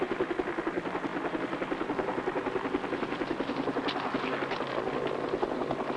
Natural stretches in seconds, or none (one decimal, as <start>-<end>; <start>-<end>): 0.0-6.0